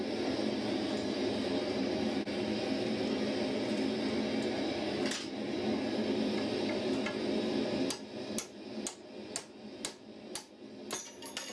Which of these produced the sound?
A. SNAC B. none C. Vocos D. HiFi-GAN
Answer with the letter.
B